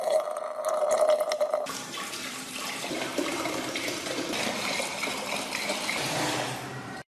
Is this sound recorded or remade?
remade